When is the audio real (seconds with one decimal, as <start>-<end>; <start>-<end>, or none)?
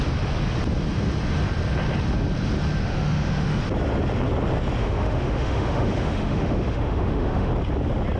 0.0-2.8; 3.6-4.8; 7.5-8.2